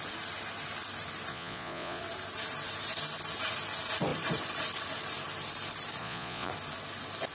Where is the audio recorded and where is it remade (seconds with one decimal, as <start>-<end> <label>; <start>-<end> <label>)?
0.0-1.3 recorded; 1.3-2.0 remade; 2.0-6.0 recorded; 6.0-6.5 remade; 6.5-7.3 recorded